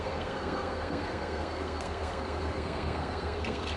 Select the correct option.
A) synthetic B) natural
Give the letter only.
A